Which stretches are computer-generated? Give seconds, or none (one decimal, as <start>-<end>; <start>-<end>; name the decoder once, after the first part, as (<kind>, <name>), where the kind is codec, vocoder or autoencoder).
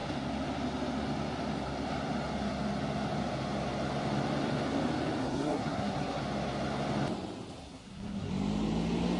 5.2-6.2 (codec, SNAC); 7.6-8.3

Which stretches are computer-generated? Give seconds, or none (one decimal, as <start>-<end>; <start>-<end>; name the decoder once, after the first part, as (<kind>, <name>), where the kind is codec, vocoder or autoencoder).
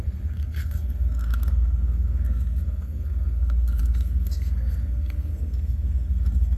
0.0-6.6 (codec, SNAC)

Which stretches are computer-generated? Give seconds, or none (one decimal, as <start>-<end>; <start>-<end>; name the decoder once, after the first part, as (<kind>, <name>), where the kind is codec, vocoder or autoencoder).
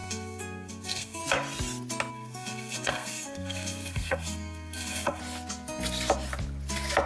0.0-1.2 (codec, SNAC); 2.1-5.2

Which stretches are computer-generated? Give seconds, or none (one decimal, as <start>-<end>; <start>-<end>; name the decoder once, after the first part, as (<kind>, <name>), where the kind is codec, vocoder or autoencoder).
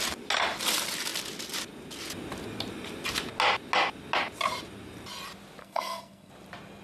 5.6-6.3 (codec, SNAC)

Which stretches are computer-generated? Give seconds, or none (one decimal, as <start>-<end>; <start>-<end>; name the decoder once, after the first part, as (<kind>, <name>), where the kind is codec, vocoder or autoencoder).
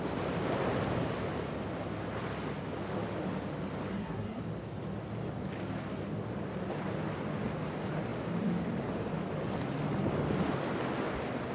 3.9-4.4 (codec, SNAC)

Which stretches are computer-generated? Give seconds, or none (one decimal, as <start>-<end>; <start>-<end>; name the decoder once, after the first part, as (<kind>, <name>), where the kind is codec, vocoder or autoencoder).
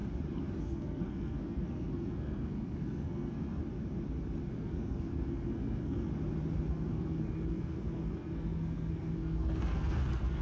0.6-3.6 (codec, SNAC); 4.5-6.1; 6.7-10.4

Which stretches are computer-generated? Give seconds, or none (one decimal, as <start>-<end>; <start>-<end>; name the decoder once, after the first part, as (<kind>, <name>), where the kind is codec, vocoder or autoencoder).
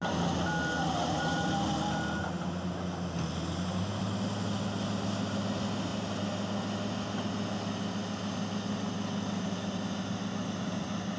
none